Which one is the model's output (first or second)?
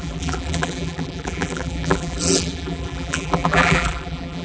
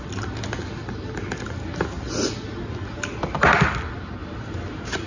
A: first